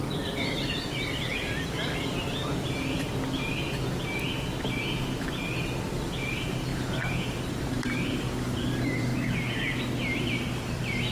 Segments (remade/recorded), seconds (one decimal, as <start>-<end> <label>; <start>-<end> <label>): 0.0-3.1 remade; 3.1-5.4 recorded; 5.4-9.1 remade; 9.1-10.2 recorded; 10.2-11.1 remade